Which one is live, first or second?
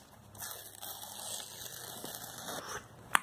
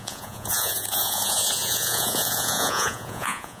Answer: first